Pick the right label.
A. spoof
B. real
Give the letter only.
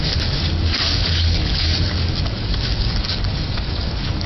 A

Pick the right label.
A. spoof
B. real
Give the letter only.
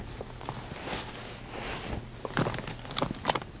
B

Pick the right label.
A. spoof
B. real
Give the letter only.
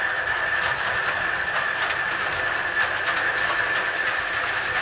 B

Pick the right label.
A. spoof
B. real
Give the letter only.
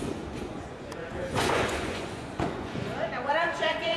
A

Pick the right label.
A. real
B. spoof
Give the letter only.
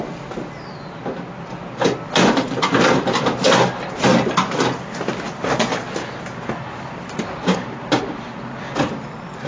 A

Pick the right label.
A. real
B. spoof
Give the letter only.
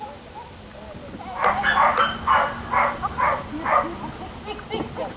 A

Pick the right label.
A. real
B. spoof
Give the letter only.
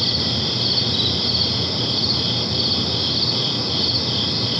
A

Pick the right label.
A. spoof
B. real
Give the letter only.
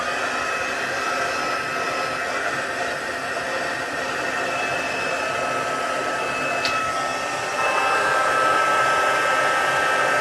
B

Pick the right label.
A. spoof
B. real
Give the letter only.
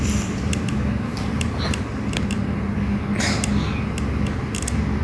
B